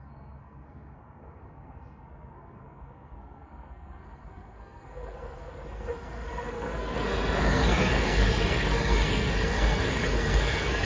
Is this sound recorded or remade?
remade